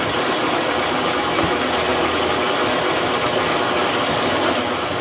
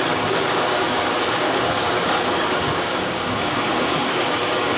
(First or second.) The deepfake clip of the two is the second